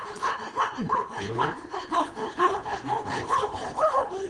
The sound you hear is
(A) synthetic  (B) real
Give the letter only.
A